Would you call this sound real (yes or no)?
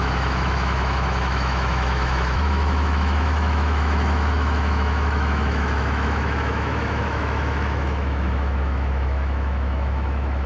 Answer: no